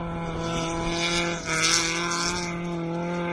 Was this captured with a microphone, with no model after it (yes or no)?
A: yes